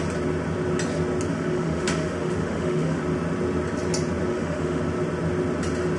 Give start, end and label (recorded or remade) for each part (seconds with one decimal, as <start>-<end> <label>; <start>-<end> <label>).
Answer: 0.0-1.3 recorded; 1.3-3.0 remade; 3.0-4.3 recorded; 4.3-4.8 remade; 4.8-6.0 recorded